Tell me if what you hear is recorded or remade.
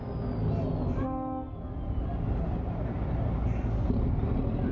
recorded